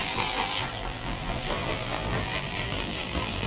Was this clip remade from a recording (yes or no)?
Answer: yes